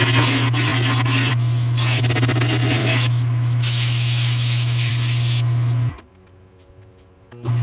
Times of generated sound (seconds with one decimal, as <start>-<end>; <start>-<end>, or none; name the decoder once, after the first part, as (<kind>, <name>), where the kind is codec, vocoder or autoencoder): 2.8-4.9 (autoencoder, DAC-VAE)

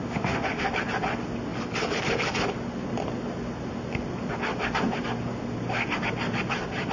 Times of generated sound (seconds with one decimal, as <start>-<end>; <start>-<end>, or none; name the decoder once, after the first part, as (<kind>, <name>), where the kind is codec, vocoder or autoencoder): 0.0-0.7 (autoencoder, DAC-VAE)

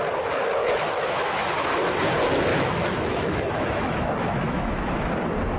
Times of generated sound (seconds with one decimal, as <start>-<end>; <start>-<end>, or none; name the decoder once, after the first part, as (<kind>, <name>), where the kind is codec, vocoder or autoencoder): 0.6-1.5 (autoencoder, DAC-VAE); 2.5-5.1

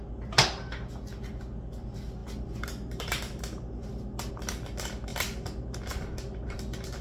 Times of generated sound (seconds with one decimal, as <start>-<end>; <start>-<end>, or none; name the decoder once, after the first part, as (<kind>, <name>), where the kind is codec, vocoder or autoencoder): none